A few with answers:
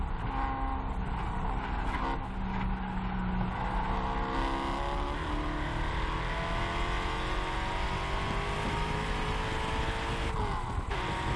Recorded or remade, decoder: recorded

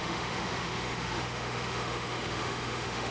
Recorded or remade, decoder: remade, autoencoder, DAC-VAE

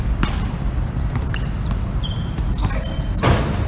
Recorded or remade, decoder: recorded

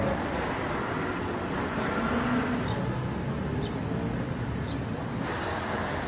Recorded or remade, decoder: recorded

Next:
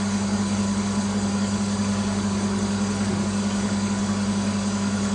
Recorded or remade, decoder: remade, codec, DAC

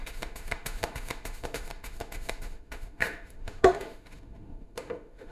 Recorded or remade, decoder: remade, autoencoder, DAC-VAE